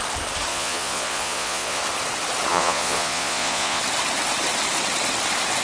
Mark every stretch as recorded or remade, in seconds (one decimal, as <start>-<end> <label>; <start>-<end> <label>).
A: 0.0-0.5 recorded; 0.5-1.8 remade; 1.8-2.5 recorded; 2.5-3.8 remade; 3.8-5.6 recorded